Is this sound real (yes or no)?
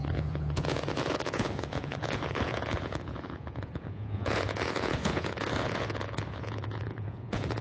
no